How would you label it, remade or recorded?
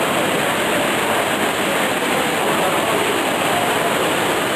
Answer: recorded